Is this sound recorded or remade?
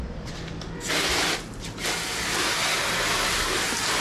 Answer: recorded